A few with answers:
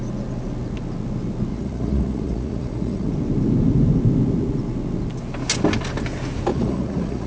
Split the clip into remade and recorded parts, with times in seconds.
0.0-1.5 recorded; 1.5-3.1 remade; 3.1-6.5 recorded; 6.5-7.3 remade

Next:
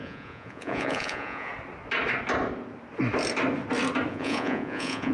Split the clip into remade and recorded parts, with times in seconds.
0.0-1.5 remade; 1.5-4.1 recorded; 4.1-5.1 remade

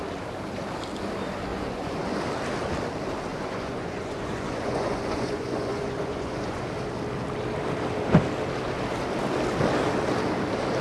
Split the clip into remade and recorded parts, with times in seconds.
0.0-1.5 recorded; 1.5-2.2 remade; 2.2-3.3 recorded; 3.3-6.6 remade; 6.6-10.8 recorded